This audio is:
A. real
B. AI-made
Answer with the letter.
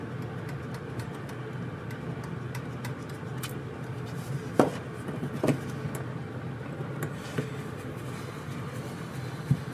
A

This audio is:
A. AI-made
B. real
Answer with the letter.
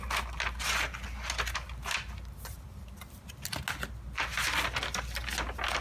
B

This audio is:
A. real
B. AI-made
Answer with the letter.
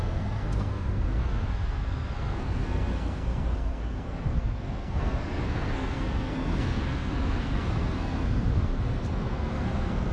B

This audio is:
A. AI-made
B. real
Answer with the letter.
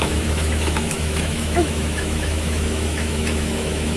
A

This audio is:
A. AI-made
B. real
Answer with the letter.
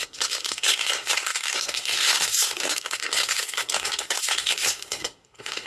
A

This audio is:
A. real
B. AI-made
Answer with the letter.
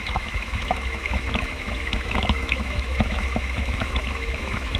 B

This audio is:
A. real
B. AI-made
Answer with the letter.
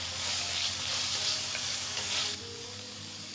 B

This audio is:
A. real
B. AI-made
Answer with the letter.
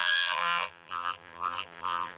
B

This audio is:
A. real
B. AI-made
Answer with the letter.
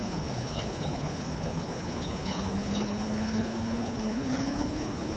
B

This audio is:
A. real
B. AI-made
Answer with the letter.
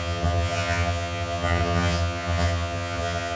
B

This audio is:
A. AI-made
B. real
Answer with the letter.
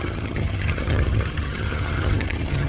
A